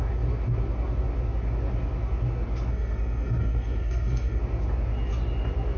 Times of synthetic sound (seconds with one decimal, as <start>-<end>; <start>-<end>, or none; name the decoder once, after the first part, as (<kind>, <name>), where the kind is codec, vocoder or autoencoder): 2.7-4.4 (codec, SNAC)